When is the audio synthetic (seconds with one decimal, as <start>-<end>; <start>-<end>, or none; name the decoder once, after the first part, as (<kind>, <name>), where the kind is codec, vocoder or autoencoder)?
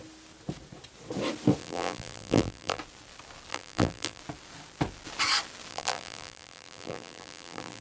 1.6-2.8 (vocoder, BigVGAN v2); 3.5-4.2; 5.7-7.8